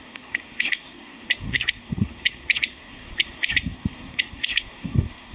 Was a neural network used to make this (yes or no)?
yes